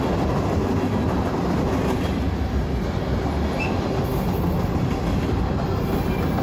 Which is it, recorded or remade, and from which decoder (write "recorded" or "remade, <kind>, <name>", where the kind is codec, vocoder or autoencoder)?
recorded